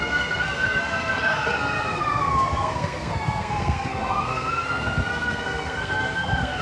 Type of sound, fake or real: fake